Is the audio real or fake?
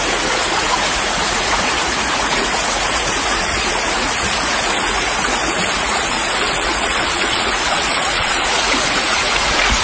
fake